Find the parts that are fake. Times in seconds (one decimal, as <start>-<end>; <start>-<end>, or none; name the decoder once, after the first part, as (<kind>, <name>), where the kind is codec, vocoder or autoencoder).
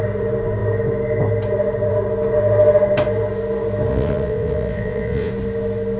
3.9-5.3 (vocoder, WaveNeXt)